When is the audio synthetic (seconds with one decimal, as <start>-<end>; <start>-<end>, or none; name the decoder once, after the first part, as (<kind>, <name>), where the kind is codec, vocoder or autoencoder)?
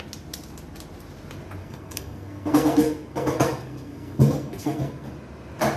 1.6-5.1 (codec, SNAC)